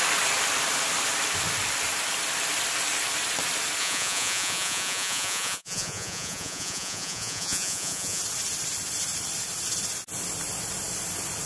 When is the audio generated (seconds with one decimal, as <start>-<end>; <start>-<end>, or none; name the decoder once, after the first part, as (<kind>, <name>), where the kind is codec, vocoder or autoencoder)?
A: 3.8-8.2 (vocoder, Vocos)